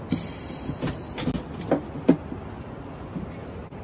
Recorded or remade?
recorded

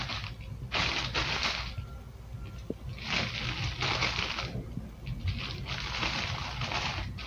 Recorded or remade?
recorded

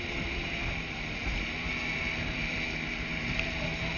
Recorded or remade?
remade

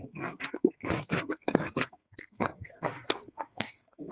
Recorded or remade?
remade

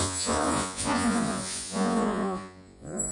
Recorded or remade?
remade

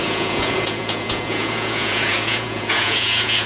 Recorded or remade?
remade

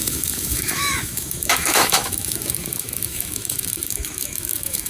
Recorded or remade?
remade